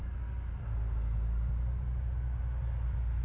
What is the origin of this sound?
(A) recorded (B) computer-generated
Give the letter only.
A